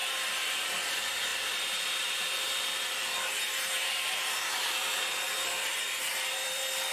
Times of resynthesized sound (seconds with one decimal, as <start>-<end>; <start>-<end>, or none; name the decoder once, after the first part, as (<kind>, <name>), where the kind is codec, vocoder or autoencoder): 0.0-6.9 (vocoder, BigVGAN v2)